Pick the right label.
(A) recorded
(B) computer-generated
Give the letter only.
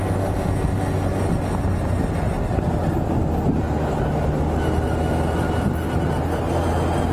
A